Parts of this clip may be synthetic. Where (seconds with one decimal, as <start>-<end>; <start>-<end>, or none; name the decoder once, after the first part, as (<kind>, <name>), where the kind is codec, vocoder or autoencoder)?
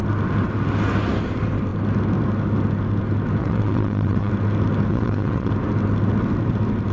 3.4-4.3 (vocoder, WaveNeXt); 4.9-5.5